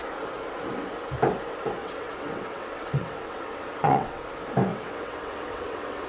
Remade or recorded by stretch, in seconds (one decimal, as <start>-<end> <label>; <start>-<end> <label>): 0.0-1.8 recorded; 1.8-4.2 remade; 4.2-4.7 recorded; 4.7-6.1 remade